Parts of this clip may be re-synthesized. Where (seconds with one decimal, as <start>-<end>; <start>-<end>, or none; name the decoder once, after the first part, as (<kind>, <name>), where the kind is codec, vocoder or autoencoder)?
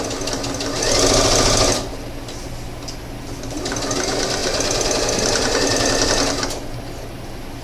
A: none